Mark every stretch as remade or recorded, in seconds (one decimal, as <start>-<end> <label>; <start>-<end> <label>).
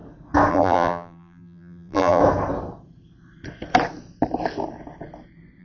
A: 0.0-0.5 recorded; 0.5-2.2 remade; 2.2-5.6 recorded